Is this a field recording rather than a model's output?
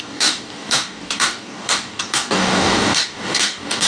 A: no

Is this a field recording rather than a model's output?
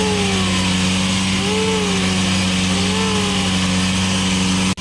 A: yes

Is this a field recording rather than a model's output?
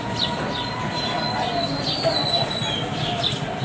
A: yes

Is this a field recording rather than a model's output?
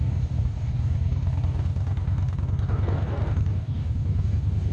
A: no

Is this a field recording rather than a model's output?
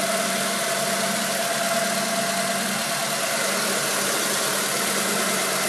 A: yes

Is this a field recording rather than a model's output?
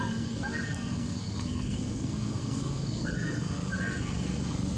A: no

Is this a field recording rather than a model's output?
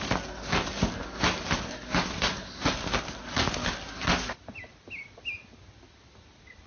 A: yes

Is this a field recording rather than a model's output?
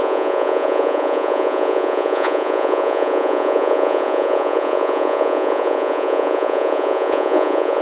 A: no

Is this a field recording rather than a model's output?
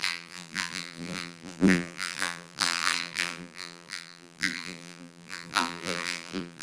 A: no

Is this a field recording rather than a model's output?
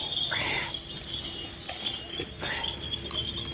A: yes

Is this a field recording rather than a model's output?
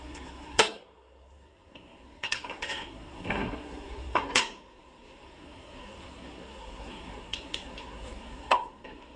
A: no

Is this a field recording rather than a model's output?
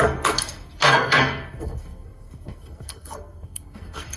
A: no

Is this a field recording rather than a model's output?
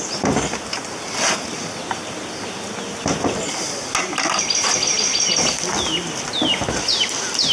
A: yes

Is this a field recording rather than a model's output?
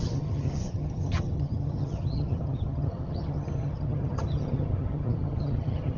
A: no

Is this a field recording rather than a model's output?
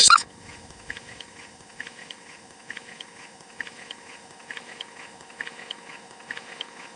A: no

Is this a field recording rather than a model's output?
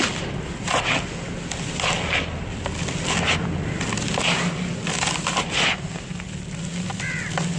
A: yes